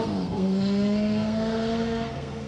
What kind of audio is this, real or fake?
fake